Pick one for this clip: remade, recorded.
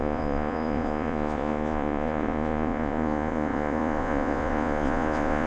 remade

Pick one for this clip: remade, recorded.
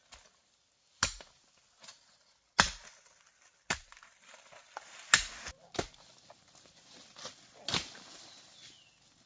recorded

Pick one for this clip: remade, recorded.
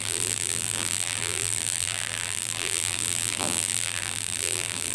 remade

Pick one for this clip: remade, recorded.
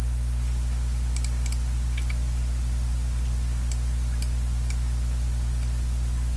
recorded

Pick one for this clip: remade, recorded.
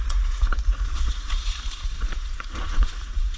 remade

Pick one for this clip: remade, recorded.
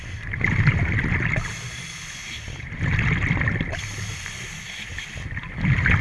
recorded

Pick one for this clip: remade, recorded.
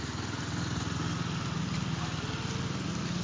recorded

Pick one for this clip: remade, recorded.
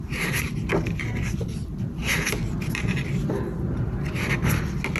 recorded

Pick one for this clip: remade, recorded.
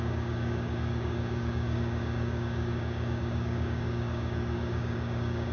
remade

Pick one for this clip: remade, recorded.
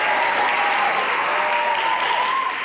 recorded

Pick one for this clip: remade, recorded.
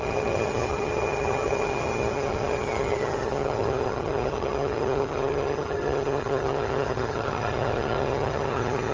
remade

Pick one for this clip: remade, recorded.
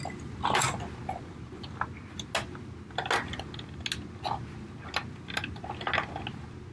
recorded